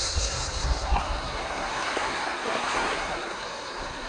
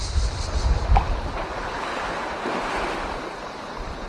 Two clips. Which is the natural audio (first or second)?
second